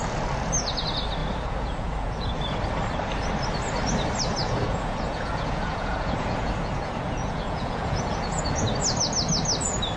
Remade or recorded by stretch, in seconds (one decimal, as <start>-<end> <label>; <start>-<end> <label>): 0.0-1.2 recorded; 1.2-2.4 remade; 2.4-4.4 recorded; 4.4-8.7 remade; 8.7-10.0 recorded